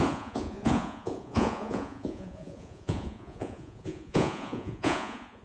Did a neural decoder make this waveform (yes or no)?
yes